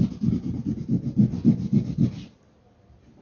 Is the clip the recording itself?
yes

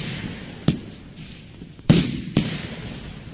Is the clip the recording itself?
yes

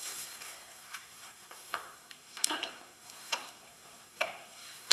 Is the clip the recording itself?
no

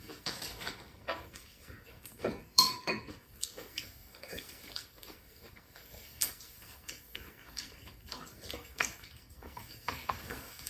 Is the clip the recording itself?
no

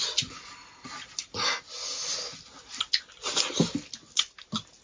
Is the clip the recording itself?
yes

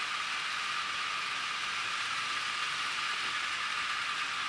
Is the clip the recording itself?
yes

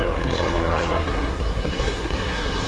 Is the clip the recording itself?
no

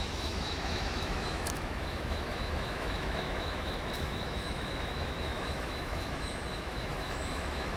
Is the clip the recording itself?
no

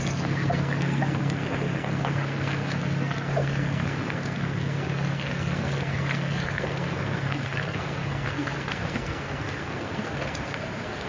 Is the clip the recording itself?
no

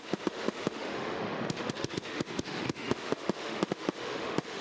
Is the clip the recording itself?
no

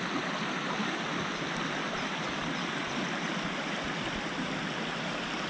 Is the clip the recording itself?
yes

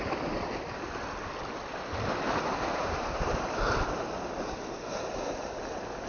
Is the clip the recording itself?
yes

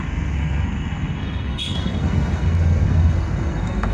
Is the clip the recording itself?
no